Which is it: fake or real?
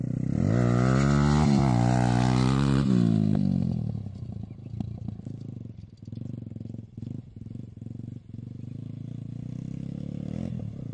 real